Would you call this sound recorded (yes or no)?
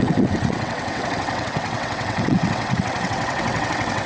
no